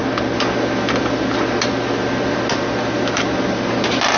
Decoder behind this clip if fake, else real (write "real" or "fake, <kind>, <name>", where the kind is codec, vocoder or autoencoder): real